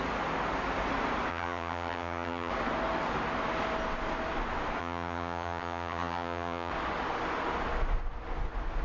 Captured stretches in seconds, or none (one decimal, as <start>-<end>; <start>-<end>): 0.0-1.3; 2.5-4.8; 6.7-8.8